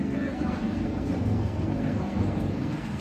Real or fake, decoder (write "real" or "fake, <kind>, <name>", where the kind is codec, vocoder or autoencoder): fake, codec, SNAC